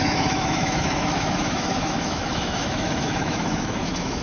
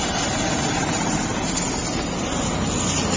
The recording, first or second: second